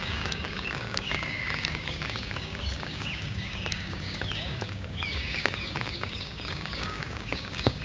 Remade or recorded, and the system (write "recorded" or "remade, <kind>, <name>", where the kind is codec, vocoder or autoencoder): remade, codec, DAC